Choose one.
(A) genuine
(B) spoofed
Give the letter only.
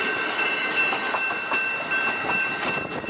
A